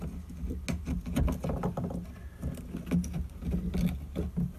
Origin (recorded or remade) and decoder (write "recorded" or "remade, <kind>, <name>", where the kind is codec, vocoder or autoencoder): recorded